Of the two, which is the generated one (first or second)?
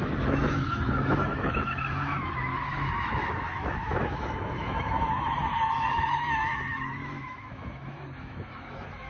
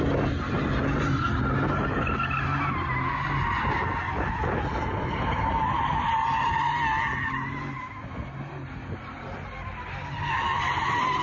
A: first